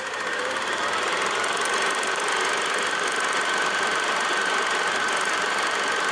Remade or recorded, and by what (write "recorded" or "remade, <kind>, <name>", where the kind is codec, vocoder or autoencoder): remade, vocoder, BigVGAN v2